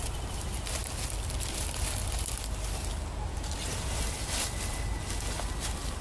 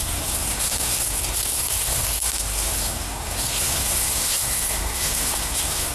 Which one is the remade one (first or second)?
second